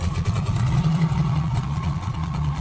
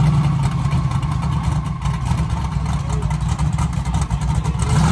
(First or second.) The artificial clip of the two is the first